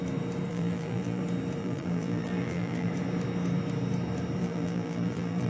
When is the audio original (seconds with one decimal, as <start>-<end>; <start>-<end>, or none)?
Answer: 0.0-0.5; 1.2-1.6; 2.9-4.4